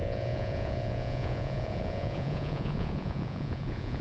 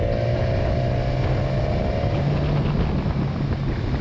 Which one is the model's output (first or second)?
first